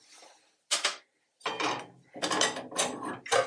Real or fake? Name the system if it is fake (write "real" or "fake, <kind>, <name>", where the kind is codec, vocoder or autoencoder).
real